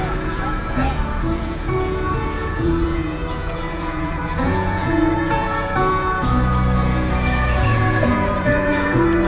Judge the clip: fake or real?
fake